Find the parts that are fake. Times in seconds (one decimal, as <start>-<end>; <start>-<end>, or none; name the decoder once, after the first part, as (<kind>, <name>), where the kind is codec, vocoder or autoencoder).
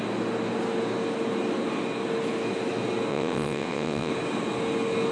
3.1-4.1 (vocoder, WaveNeXt)